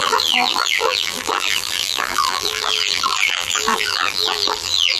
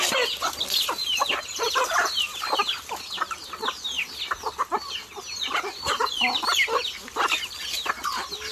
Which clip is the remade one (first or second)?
first